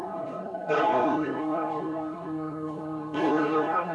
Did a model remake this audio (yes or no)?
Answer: yes